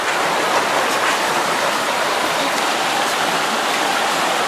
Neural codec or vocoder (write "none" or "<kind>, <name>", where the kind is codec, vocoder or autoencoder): none